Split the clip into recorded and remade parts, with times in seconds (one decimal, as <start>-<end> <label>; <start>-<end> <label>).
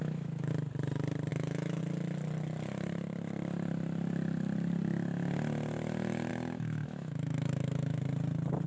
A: 0.0-0.5 remade; 0.5-1.3 recorded; 1.3-1.8 remade; 1.8-6.3 recorded; 6.3-8.0 remade; 8.0-8.7 recorded